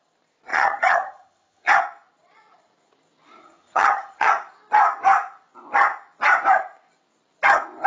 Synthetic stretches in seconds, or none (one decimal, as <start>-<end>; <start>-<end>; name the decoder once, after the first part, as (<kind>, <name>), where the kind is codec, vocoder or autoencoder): 0.5-1.7 (vocoder, HiFi-GAN); 3.4-4.3